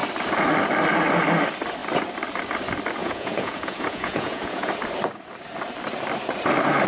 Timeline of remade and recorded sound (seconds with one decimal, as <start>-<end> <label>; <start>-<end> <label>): 0.0-3.0 recorded; 3.0-4.7 remade; 4.7-6.9 recorded